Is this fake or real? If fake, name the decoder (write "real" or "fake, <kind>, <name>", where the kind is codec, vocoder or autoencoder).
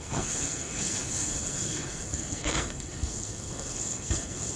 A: fake, codec, SNAC